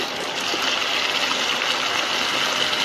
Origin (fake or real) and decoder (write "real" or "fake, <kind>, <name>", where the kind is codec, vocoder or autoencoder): real